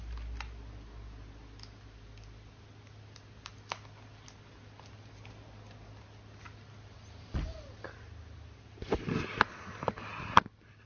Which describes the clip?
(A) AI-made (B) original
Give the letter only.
B